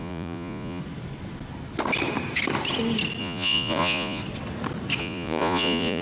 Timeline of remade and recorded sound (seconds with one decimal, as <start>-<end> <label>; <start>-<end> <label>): 0.0-0.8 remade; 0.8-3.2 recorded; 3.2-4.2 remade; 4.2-5.0 recorded; 5.0-6.0 remade